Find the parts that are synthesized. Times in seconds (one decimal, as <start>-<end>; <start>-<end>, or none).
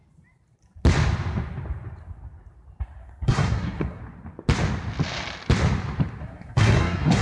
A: 3.0-4.0; 6.2-7.2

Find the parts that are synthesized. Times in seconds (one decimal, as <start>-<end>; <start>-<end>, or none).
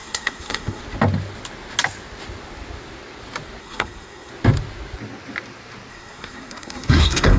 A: 0.0-0.8; 3.6-4.3; 5.9-7.4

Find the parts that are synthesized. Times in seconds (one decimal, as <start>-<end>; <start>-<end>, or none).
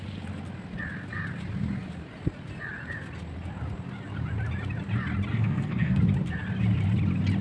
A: 5.3-6.0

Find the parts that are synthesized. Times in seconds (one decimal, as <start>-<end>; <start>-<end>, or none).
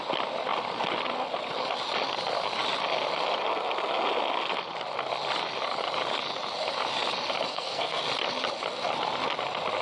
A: 7.5-8.0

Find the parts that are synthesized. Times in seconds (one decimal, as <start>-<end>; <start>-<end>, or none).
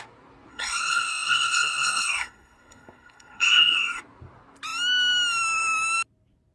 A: 0.5-4.0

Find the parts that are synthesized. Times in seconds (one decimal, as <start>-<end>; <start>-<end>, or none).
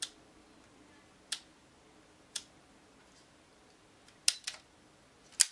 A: none